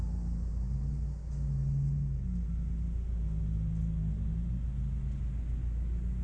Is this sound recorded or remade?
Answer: recorded